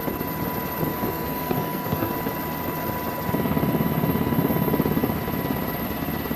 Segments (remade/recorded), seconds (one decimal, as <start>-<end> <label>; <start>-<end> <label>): 0.0-0.9 recorded; 0.9-2.1 remade; 2.1-6.4 recorded